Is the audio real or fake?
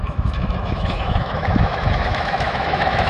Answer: fake